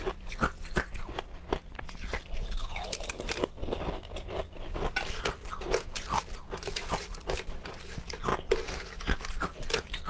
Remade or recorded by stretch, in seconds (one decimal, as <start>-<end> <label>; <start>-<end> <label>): 0.0-10.1 recorded